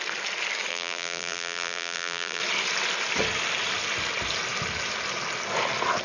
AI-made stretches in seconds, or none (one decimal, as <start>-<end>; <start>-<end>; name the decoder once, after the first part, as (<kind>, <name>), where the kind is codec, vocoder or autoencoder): 0.7-2.4 (vocoder, BigVGAN v2)